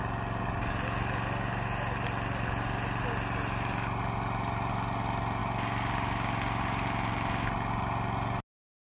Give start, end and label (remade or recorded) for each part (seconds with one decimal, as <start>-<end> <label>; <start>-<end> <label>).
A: 0.0-8.9 recorded